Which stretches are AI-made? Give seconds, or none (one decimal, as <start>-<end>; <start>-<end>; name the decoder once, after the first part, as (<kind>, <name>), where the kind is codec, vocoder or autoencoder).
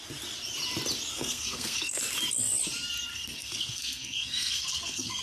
1.1-2.0 (codec, SNAC); 3.1-5.2